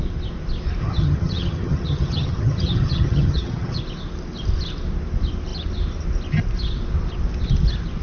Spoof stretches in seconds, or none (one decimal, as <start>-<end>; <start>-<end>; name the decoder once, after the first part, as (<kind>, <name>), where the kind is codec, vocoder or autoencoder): 0.8-3.8 (vocoder, HiFi-GAN)